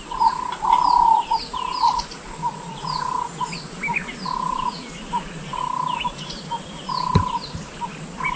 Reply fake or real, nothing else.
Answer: real